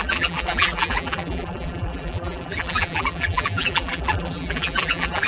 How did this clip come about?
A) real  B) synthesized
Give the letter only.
B